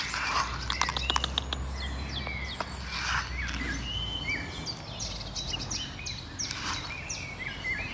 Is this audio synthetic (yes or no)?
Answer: no